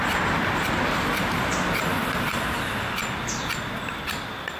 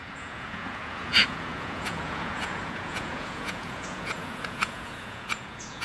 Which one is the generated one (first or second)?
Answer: second